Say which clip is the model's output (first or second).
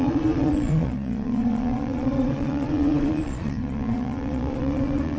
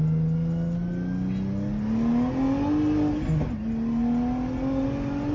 first